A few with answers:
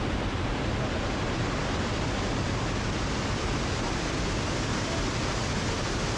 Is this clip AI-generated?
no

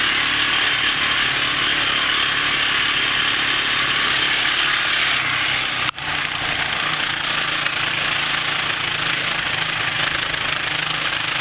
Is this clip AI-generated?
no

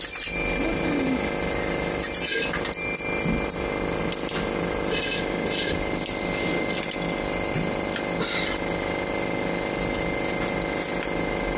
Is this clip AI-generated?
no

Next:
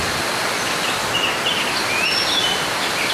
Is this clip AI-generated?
no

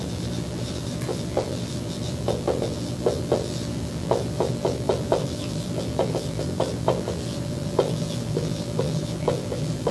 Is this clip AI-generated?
yes